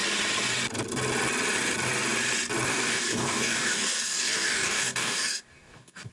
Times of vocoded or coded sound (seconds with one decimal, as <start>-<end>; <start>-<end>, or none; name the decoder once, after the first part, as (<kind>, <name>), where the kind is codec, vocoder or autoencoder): 2.7-6.1 (codec, DAC)